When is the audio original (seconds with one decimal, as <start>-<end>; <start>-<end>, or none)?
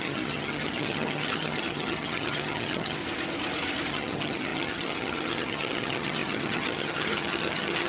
3.0-3.9